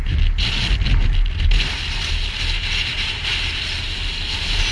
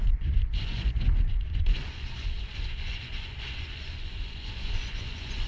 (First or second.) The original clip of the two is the first